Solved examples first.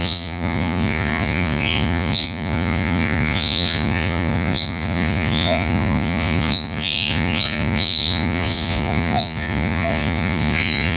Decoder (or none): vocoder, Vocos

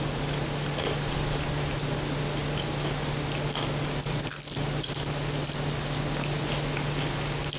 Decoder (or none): none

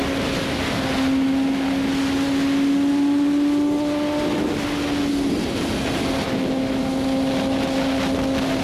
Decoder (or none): none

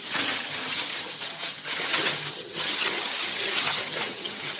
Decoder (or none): vocoder, HiFi-GAN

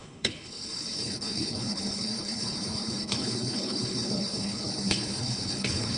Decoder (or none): codec, HILCodec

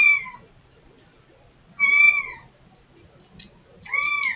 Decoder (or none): none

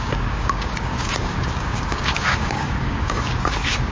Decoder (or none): codec, DAC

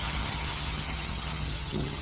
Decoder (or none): vocoder, HiFi-GAN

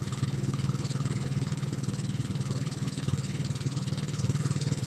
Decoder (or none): codec, HILCodec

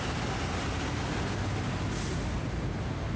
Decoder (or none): none